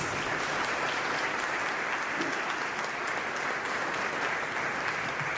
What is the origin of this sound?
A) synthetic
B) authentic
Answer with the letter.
B